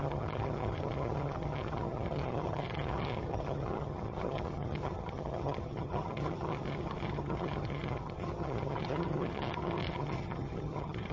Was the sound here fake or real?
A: fake